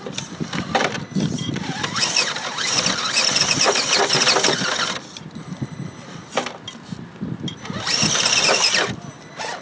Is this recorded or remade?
recorded